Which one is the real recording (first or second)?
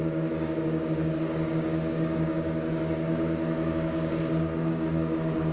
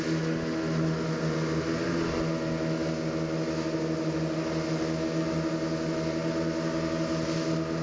second